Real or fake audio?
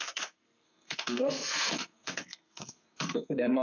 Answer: fake